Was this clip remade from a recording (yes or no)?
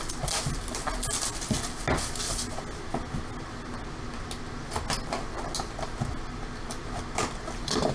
no